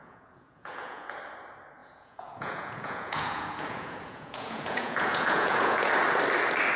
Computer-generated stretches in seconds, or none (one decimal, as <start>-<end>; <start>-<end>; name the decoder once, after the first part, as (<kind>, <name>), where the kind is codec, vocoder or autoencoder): 0.0-1.2 (vocoder, Vocos); 1.8-5.9